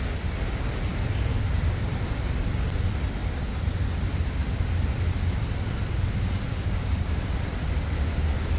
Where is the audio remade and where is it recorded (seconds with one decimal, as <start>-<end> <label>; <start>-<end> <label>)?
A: 0.0-6.5 recorded; 6.5-7.2 remade; 7.2-8.6 recorded